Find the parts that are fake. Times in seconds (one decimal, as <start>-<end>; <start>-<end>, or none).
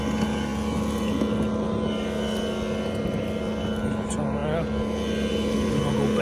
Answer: none